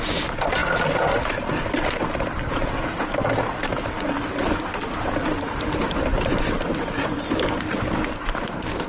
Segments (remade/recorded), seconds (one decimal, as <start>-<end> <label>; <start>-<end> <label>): 0.0-2.6 recorded; 2.6-3.1 remade; 3.1-8.9 recorded